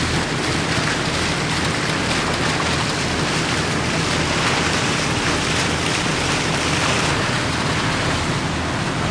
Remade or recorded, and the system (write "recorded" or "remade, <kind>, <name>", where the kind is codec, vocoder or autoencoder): recorded